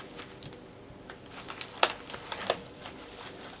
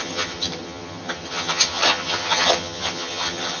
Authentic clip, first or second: first